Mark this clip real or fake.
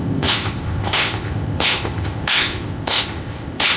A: fake